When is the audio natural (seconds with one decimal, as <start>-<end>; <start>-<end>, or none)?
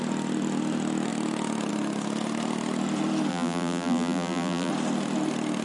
0.0-3.3; 4.7-5.6